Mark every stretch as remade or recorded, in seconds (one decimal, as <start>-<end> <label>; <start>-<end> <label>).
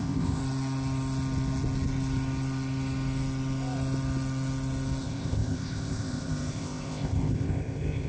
0.0-0.4 remade; 0.4-5.0 recorded; 5.0-8.1 remade